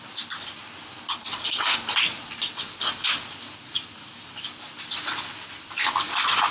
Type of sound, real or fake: real